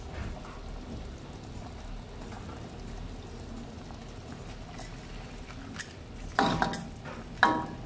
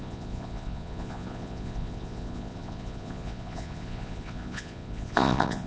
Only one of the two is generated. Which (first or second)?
second